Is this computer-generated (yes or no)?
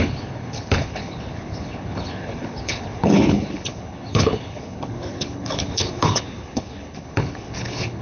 yes